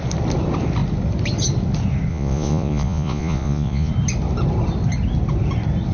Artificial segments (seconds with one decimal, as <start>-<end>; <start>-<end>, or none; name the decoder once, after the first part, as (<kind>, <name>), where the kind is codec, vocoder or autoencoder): 2.1-3.9 (vocoder, Vocos)